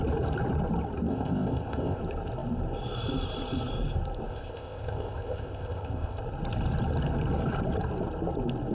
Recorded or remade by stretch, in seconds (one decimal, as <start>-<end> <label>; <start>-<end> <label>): 0.0-1.1 recorded; 1.1-2.0 remade; 2.0-4.3 recorded; 4.3-6.2 remade; 6.2-8.7 recorded